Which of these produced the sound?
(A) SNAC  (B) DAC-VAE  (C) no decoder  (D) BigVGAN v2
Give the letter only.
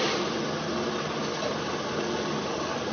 C